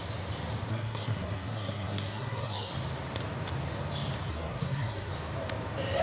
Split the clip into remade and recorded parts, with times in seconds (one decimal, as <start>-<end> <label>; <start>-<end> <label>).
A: 0.0-0.7 recorded; 0.7-2.7 remade; 2.7-4.3 recorded; 4.3-5.1 remade; 5.1-6.0 recorded